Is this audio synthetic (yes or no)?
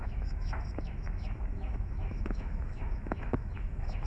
yes